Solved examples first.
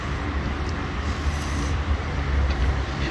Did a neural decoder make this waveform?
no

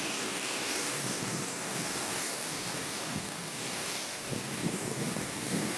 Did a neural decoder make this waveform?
yes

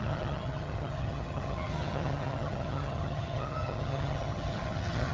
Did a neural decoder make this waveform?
yes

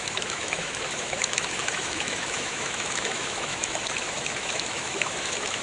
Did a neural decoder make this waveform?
yes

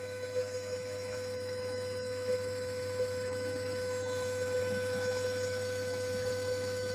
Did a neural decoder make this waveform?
yes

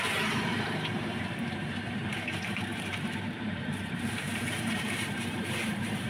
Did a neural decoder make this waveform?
yes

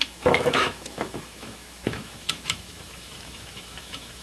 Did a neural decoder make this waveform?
yes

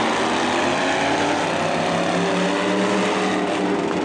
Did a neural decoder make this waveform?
no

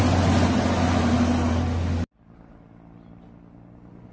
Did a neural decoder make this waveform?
no